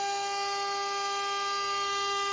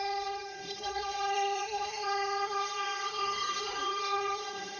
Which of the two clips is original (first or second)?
first